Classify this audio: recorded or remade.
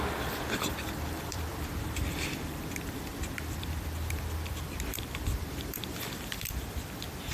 remade